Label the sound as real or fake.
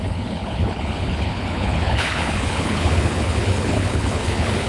fake